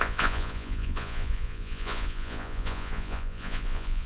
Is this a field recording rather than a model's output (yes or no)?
no